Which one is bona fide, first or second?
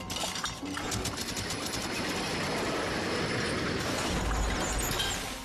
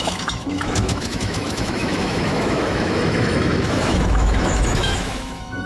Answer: first